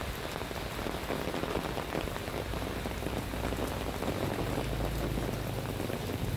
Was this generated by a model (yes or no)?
no